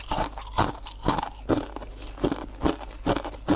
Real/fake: real